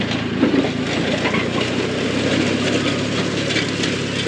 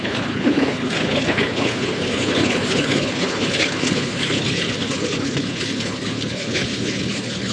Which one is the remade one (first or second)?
second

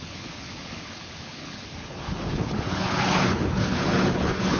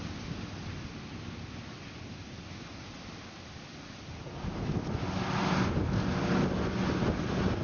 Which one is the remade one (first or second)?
first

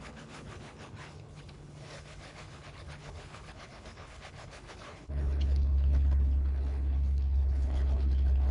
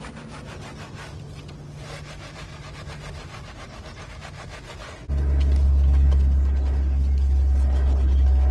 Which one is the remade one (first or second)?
first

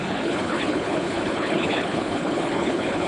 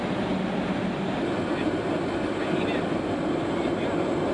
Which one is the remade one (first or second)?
first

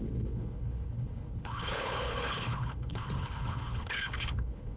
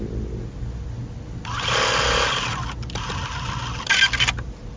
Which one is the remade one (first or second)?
first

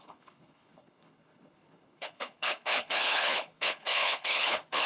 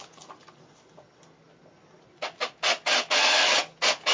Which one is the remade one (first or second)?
first